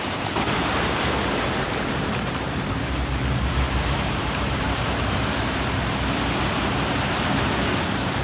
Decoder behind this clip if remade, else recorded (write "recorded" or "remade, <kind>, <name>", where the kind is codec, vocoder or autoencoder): remade, vocoder, BigVGAN v2